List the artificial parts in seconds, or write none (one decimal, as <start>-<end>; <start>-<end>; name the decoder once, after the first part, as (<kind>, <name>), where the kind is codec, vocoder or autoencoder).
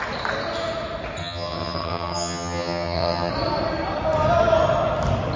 1.2-3.3 (vocoder, HiFi-GAN)